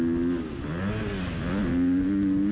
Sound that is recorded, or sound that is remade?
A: recorded